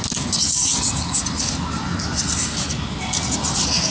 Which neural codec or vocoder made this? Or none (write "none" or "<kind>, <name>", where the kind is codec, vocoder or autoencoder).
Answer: none